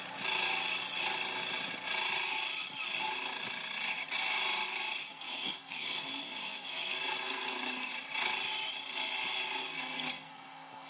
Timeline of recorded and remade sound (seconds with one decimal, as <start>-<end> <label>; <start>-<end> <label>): 0.0-5.0 recorded; 5.0-7.9 remade; 7.9-9.6 recorded; 9.6-10.9 remade